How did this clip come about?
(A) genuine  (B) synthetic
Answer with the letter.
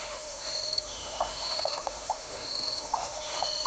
B